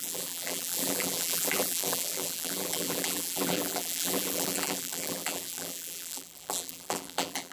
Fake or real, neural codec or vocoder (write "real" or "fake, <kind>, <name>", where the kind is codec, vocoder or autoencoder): fake, vocoder, BigVGAN v2